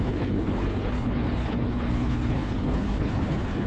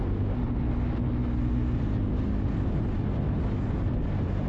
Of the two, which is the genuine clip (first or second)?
second